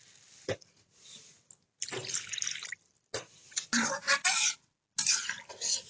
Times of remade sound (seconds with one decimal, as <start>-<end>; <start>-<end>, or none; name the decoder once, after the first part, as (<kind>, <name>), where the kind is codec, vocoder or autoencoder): none